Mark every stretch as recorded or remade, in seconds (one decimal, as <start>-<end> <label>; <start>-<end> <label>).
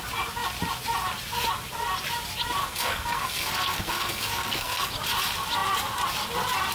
0.0-2.6 recorded; 2.6-4.9 remade; 4.9-6.7 recorded